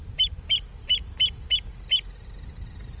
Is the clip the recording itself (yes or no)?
no